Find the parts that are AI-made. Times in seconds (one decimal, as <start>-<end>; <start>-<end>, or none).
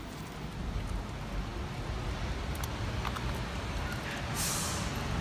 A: none